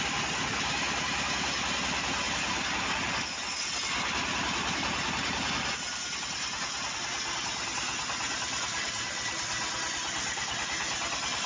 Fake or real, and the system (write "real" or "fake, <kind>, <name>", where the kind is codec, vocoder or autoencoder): real